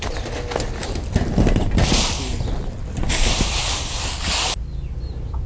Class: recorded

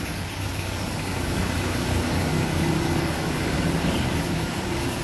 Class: remade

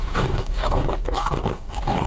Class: remade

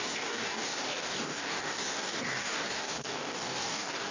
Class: remade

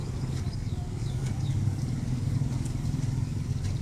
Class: remade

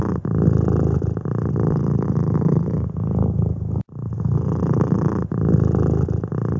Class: recorded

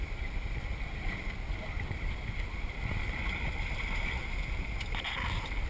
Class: recorded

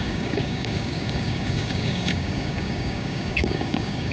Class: remade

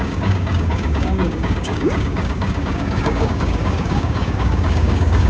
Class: remade